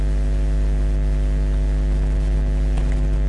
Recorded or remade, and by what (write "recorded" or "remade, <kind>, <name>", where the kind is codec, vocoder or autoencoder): recorded